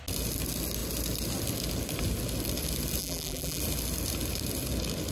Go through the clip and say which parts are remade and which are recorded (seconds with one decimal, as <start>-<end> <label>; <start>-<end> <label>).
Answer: 0.0-3.0 recorded; 3.0-3.6 remade; 3.6-5.1 recorded